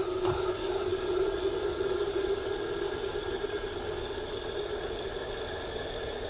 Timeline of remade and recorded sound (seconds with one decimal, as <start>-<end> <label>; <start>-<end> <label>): 0.0-6.3 recorded